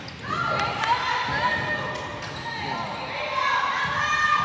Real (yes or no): yes